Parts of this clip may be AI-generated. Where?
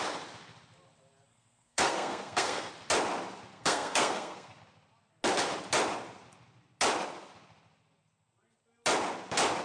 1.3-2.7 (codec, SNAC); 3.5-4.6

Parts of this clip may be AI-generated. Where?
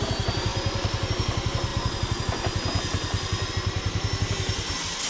none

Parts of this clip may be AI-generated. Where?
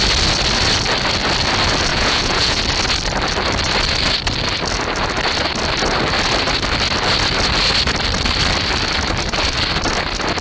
1.9-2.6 (vocoder, Vocos)